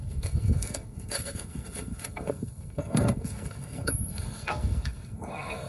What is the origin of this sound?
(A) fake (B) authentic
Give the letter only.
A